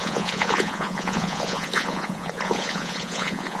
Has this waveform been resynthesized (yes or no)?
yes